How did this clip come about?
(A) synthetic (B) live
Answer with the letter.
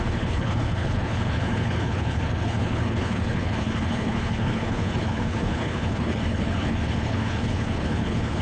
A